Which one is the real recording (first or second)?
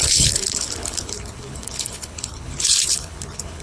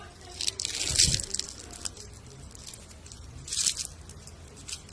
second